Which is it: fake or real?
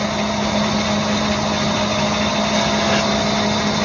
real